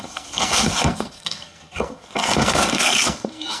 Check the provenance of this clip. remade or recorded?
remade